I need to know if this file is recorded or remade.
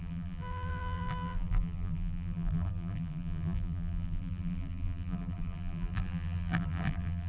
remade